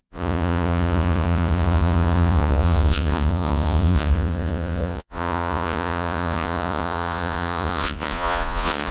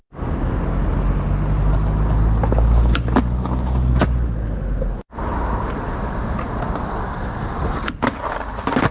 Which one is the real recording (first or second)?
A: second